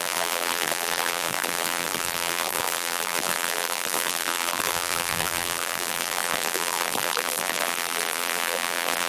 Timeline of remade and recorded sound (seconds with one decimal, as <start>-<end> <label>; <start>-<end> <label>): 0.0-9.1 remade